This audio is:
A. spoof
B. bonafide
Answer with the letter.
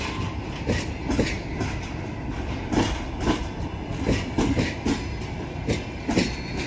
B